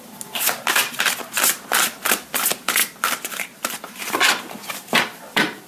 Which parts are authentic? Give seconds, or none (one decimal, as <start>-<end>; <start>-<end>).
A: none